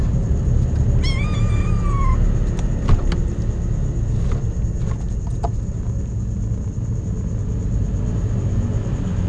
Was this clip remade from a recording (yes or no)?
no